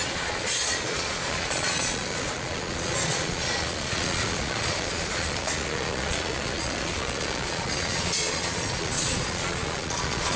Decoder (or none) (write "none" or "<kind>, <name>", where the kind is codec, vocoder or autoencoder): vocoder, Vocos